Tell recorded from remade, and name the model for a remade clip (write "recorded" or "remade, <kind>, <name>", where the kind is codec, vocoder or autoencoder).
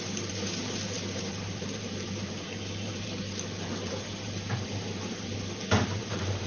remade, vocoder, BigVGAN v2